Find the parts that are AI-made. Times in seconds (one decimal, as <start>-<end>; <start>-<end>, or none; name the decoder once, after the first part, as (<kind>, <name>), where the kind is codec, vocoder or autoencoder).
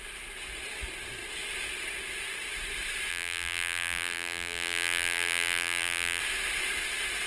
3.1-6.2 (vocoder, BigVGAN v2)